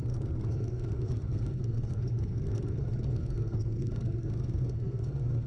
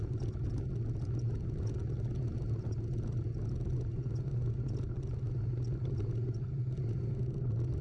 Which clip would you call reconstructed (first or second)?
first